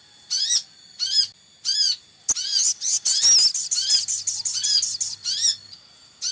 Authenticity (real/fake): real